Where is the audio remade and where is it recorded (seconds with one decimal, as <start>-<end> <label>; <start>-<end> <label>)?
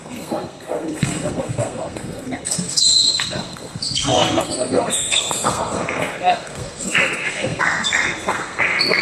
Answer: 0.0-9.0 remade